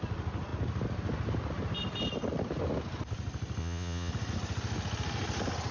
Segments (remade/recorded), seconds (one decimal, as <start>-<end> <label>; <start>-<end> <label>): 0.0-3.6 recorded; 3.6-4.1 remade; 4.1-5.7 recorded